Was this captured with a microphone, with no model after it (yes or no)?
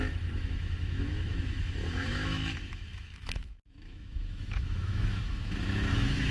no